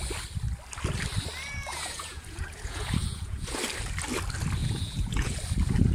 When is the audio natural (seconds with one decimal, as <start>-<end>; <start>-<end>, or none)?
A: 0.0-1.7; 3.6-4.6; 5.4-5.9